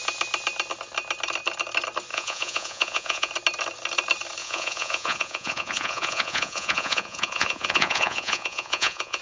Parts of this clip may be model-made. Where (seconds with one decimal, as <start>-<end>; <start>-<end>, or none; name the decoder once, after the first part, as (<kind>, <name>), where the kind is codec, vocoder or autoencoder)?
2.1-3.3 (vocoder, Vocos); 4.4-9.2